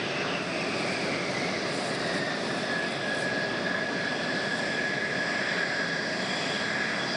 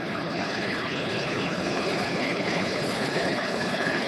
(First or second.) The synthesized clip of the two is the second